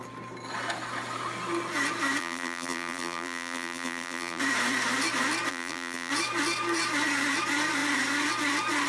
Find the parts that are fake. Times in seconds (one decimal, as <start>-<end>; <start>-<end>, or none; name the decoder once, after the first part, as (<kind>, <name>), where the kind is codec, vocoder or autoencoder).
2.2-4.4 (vocoder, BigVGAN v2); 5.5-6.1